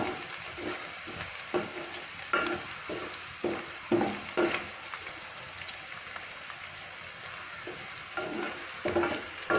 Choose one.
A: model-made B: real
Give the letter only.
B